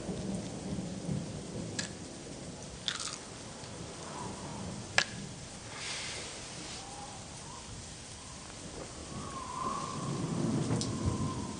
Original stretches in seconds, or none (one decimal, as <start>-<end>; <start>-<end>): 0.0-11.6